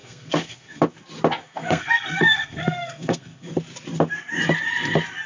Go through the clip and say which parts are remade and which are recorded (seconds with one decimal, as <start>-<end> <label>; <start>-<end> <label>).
0.0-0.8 remade; 0.8-1.4 recorded; 1.4-3.5 remade; 3.5-5.3 recorded